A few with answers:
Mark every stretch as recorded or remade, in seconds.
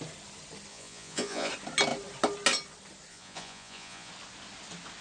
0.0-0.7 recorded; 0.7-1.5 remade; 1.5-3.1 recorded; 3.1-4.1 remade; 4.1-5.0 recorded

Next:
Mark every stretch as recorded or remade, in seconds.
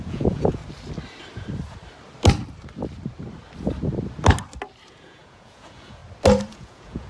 0.0-0.6 remade; 0.6-4.9 recorded; 4.9-6.0 remade; 6.0-6.5 recorded; 6.5-7.1 remade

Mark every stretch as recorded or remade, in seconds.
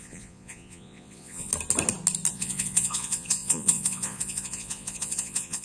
0.0-1.5 remade; 1.5-2.3 recorded; 2.3-5.6 remade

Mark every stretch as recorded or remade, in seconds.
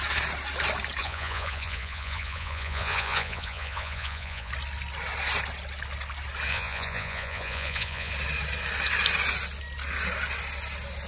0.0-1.0 recorded; 1.0-4.5 remade; 4.5-6.5 recorded; 6.5-8.1 remade; 8.1-11.1 recorded